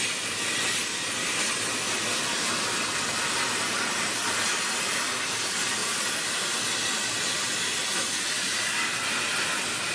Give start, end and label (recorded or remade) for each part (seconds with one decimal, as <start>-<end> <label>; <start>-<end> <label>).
0.0-9.9 recorded